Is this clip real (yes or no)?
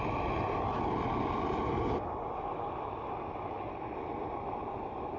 yes